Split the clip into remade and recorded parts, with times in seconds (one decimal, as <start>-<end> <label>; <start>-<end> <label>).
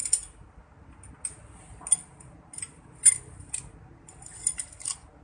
0.0-5.2 recorded